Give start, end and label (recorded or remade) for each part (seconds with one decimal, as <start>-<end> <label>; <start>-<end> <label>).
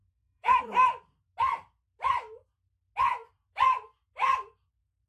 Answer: 0.0-0.6 remade; 0.6-5.1 recorded